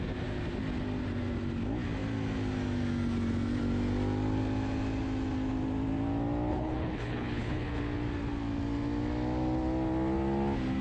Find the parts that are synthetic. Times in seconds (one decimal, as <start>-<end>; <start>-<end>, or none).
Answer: 6.5-7.8